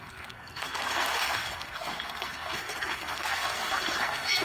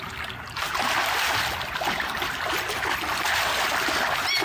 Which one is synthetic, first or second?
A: first